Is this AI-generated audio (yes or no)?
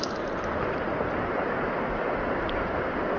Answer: no